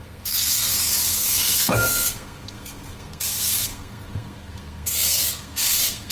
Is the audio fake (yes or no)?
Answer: yes